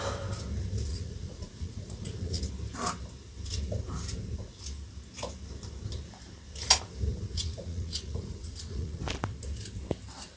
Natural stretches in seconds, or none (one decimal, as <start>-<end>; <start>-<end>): 0.0-0.9; 2.4-7.1; 9.0-10.4